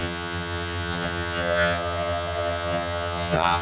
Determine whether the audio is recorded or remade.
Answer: remade